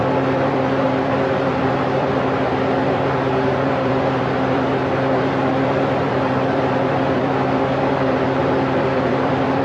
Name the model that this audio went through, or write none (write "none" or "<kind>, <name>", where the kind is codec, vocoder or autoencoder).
vocoder, BigVGAN v2